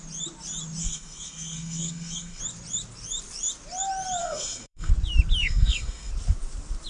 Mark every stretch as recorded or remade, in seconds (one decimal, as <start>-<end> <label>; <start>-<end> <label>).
0.0-0.8 recorded; 0.8-2.4 remade; 2.4-4.2 recorded; 4.2-4.9 remade; 4.9-5.4 recorded; 5.4-6.1 remade; 6.1-6.9 recorded